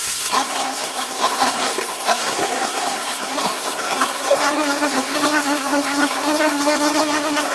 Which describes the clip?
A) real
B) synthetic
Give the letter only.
B